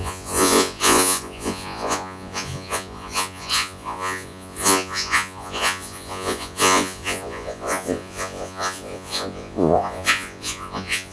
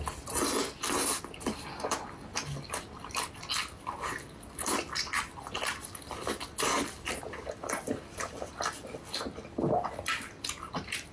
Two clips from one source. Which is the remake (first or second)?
first